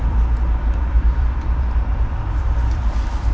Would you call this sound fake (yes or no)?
yes